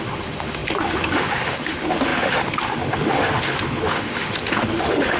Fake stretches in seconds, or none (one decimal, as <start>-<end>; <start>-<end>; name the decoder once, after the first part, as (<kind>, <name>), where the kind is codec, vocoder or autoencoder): 0.0-5.2 (autoencoder, DAC-VAE)